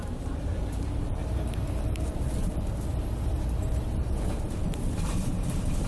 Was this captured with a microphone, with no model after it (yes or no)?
no